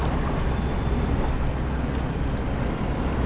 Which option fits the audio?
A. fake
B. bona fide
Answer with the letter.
B